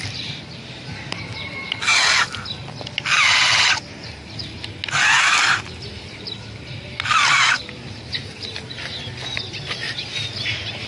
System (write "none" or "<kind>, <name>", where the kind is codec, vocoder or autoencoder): none